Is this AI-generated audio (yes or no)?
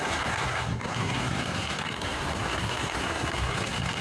yes